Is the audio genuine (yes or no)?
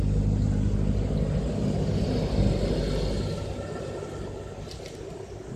yes